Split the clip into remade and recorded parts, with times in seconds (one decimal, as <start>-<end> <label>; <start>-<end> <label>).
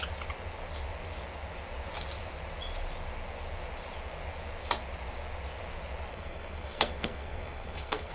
0.0-6.1 recorded; 6.1-8.1 remade